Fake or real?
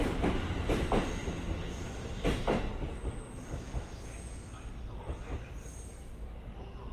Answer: real